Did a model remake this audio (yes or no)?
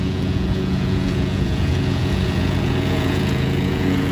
yes